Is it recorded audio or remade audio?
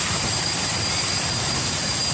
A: remade